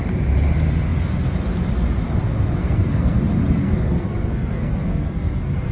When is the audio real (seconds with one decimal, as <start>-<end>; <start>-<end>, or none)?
0.0-2.6; 3.2-3.6